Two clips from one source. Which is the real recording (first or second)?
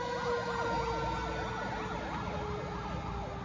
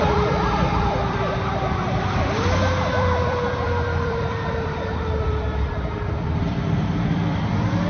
first